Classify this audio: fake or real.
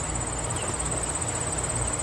real